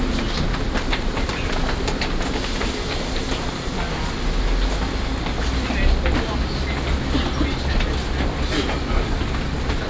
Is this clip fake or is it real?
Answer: real